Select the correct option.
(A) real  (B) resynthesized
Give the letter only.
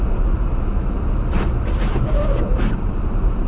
A